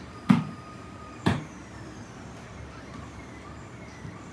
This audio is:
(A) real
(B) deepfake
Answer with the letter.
B